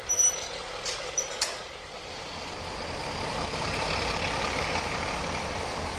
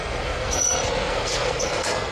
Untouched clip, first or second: first